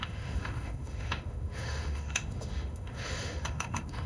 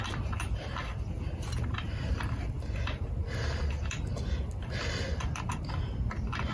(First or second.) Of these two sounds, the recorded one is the second